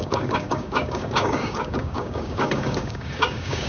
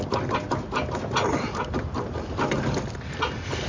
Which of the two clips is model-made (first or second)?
first